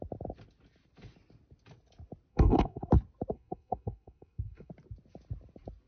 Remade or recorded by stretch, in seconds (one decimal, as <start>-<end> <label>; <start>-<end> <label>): 0.0-2.3 recorded; 2.3-2.9 remade; 2.9-3.3 recorded; 3.3-4.7 remade; 4.7-5.9 recorded